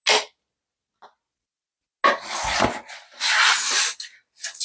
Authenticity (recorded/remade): recorded